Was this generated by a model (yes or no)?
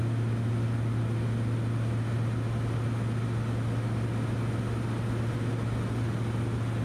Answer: no